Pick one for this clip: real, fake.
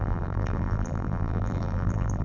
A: fake